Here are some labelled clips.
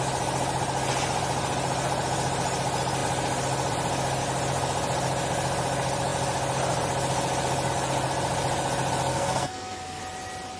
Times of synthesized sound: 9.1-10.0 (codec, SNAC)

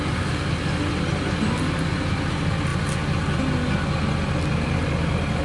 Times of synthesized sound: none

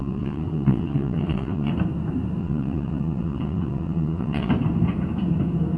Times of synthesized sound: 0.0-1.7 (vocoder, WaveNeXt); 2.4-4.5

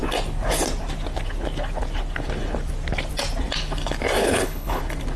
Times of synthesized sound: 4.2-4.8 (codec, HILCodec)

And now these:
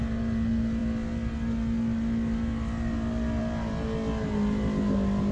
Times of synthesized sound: none

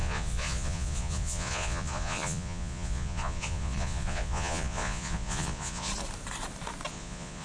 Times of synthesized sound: 0.0-5.9 (vocoder, Vocos); 6.9-7.4